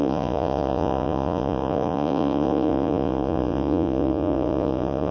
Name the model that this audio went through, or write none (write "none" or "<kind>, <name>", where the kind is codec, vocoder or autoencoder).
vocoder, Vocos